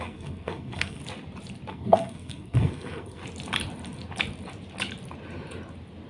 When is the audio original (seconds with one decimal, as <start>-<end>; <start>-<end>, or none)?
1.0-1.7; 3.2-6.1